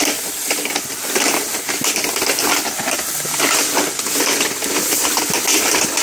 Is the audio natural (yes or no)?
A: yes